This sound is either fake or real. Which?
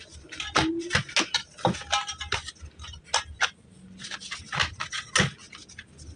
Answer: real